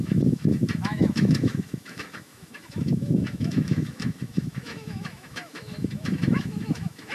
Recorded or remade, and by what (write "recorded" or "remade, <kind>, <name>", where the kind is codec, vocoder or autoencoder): remade, autoencoder, DAC-VAE